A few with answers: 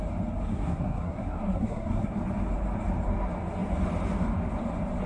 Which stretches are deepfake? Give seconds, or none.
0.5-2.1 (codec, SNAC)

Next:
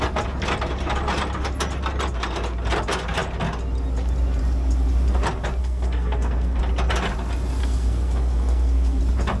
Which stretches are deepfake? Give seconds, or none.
5.6-6.6 (codec, SNAC); 7.6-9.0

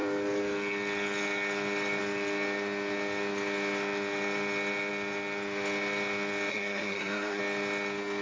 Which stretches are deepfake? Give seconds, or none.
6.5-7.4 (codec, SNAC)

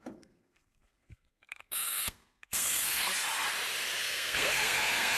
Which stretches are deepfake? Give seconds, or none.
0.0-3.1 (codec, SNAC); 4.0-5.2

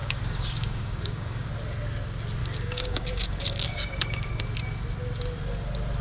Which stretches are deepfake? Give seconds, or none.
0.0-1.5 (codec, DAC); 2.4-4.4

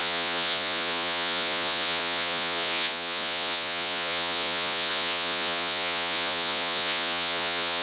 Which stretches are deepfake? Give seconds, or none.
0.0-7.8 (vocoder, Vocos)

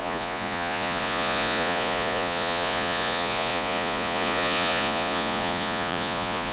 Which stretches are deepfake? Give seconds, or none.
0.0-6.5 (vocoder, Vocos)

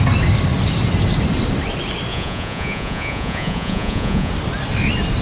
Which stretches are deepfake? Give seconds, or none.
2.1-4.3 (vocoder, Vocos)